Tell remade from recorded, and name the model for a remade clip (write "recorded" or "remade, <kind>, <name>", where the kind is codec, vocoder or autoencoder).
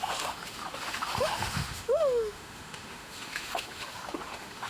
remade, autoencoder, DAC-VAE